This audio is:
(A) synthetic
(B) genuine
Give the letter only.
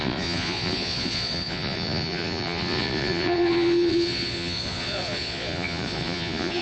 A